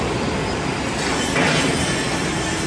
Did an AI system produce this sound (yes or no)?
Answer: no